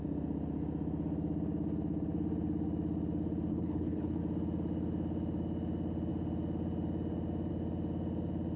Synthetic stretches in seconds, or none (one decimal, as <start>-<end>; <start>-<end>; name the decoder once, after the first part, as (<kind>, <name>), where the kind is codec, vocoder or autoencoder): 3.5-4.2 (codec, HILCodec)

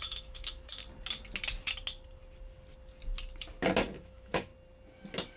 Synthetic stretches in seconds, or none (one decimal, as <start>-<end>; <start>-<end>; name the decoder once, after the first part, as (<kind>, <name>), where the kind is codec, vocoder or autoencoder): 0.0-0.8 (autoencoder, DAC-VAE); 4.0-4.5

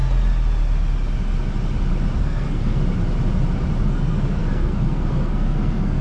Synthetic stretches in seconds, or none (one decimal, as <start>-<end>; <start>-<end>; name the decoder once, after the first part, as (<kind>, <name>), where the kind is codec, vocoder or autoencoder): 2.2-2.8 (codec, SNAC); 3.9-6.0

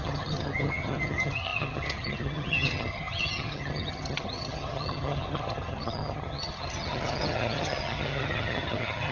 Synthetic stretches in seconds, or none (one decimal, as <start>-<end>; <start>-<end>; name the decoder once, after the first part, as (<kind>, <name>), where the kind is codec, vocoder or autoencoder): 0.0-9.1 (vocoder, HiFi-GAN)

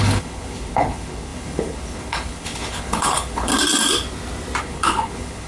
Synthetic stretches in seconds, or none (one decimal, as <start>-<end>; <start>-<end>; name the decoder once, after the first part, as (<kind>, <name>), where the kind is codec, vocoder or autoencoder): 0.0-3.5 (codec, HILCodec); 4.6-5.5

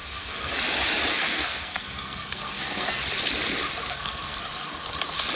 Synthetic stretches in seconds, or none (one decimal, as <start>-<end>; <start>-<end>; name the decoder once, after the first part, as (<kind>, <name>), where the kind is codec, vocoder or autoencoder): 0.0-0.5 (codec, SNAC); 1.1-3.0; 3.8-4.4